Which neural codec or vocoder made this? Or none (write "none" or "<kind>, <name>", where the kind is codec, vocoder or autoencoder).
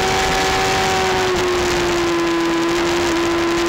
none